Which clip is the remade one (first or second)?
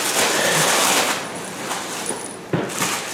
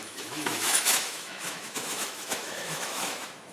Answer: second